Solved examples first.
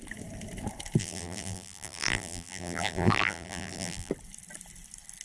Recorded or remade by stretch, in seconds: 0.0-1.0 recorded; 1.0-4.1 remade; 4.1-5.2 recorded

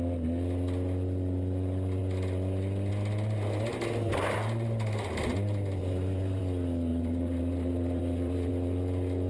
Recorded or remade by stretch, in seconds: 0.0-5.3 recorded; 5.3-6.4 remade; 6.4-6.9 recorded; 6.9-8.5 remade; 8.5-9.3 recorded

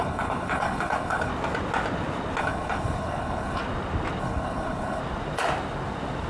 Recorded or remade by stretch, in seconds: 0.0-1.3 remade; 1.3-2.4 recorded; 2.4-3.6 remade; 3.6-4.2 recorded; 4.2-5.0 remade; 5.0-6.3 recorded